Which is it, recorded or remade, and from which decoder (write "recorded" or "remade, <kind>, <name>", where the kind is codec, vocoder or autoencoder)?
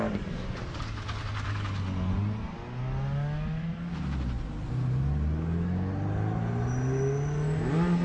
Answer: recorded